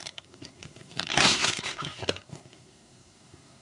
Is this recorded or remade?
remade